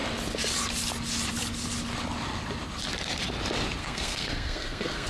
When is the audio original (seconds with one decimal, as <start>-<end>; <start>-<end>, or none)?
0.0-3.8